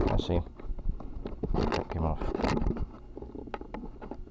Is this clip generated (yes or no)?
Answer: no